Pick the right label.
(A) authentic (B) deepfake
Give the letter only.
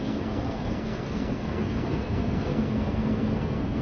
B